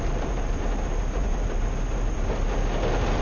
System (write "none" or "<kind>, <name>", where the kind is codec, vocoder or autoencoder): none